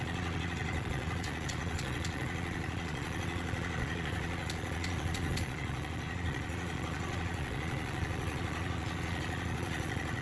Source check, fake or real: fake